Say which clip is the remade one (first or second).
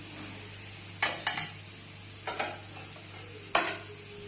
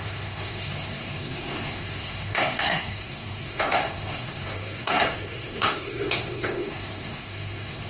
second